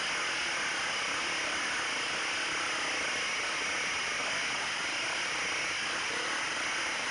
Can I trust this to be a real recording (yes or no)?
yes